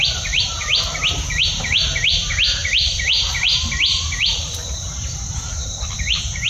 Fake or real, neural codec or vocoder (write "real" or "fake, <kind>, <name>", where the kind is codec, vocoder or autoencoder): fake, vocoder, BigVGAN v2